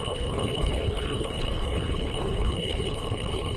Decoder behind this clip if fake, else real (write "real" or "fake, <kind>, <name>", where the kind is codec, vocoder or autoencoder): fake, codec, HILCodec